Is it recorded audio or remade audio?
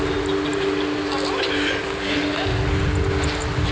recorded